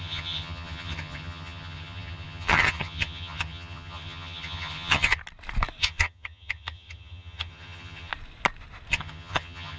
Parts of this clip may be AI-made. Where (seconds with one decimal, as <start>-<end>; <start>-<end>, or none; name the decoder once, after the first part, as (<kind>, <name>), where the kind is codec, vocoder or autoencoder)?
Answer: 0.0-5.2 (vocoder, HiFi-GAN); 5.8-8.1; 8.9-9.8